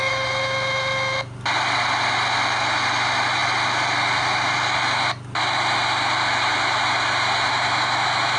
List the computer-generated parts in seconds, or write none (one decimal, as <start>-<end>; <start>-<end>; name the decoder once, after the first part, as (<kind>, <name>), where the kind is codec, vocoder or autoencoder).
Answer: none